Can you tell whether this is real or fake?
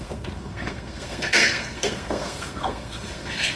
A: fake